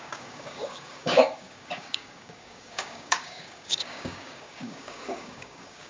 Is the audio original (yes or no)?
no